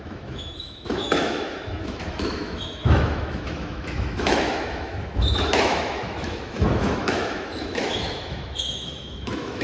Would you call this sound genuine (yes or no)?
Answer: no